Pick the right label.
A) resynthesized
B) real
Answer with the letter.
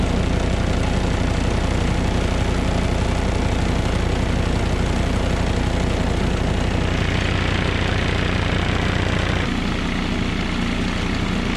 B